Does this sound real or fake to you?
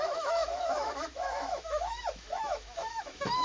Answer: fake